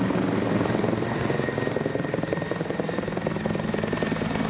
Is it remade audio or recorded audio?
recorded